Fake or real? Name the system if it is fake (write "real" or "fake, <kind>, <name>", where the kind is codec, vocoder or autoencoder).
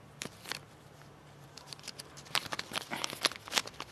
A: fake, vocoder, BigVGAN v2